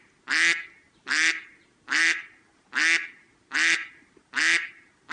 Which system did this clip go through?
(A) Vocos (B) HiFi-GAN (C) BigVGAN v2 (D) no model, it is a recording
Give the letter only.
D